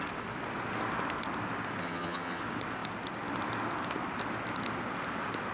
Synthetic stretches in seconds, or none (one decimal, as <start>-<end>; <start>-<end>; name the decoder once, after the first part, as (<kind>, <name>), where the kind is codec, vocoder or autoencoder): 1.8-2.4 (vocoder, HiFi-GAN)